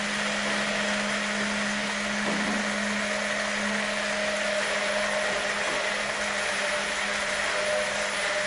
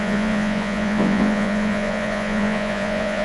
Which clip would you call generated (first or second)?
second